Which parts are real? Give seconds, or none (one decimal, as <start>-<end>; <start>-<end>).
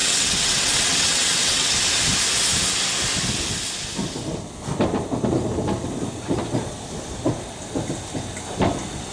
1.7-9.1